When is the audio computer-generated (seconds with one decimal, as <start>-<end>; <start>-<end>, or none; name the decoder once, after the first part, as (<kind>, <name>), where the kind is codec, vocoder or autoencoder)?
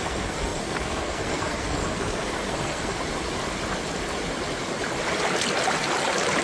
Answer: 0.0-3.0 (codec, SNAC)